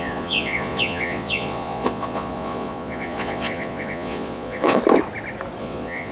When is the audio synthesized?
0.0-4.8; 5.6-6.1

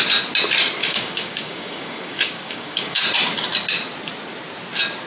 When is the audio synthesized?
0.8-3.0

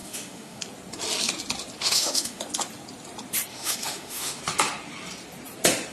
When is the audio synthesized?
0.0-0.6; 1.8-2.4; 3.5-4.4

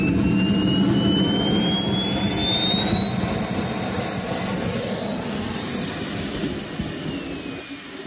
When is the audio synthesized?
none

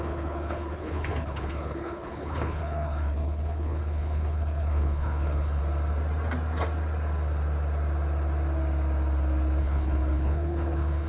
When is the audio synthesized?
0.0-5.6; 9.6-11.1

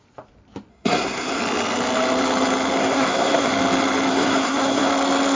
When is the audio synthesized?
0.7-1.4; 2.8-3.5; 4.1-4.9